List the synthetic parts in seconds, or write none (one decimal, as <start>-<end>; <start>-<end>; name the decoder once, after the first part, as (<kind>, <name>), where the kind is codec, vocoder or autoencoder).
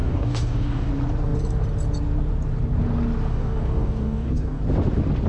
0.0-0.9 (codec, DAC); 3.3-4.6